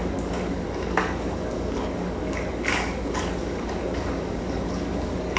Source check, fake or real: fake